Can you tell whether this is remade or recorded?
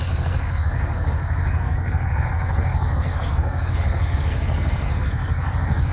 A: remade